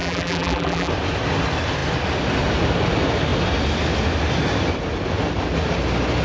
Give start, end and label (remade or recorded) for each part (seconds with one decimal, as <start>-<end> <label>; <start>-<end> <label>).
0.0-0.9 remade; 0.9-6.2 recorded